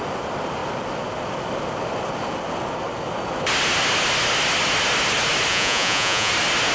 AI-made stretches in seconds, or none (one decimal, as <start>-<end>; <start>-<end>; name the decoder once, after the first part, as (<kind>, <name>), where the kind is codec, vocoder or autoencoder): 5.5-6.3 (vocoder, Vocos)